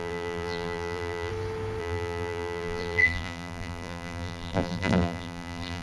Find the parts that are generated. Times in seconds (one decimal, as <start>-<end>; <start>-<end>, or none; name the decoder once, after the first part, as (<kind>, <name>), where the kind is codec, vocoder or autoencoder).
0.0-1.3 (vocoder, BigVGAN v2); 1.8-5.8